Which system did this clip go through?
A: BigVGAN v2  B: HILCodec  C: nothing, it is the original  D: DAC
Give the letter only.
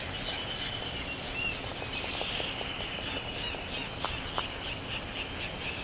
C